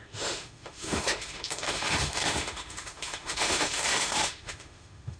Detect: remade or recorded remade